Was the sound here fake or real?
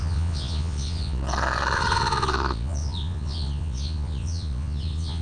fake